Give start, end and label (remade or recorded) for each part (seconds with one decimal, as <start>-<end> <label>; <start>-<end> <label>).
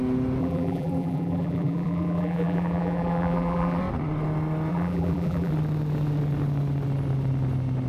0.0-0.4 recorded; 0.4-3.8 remade; 3.8-4.7 recorded; 4.7-5.5 remade; 5.5-7.9 recorded